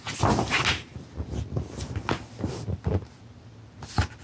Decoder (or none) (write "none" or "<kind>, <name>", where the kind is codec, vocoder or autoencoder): none